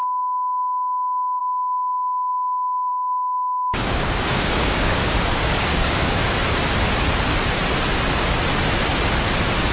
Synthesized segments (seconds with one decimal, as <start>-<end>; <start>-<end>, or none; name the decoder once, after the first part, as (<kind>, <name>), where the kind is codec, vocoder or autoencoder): 2.9-6.2 (codec, DAC)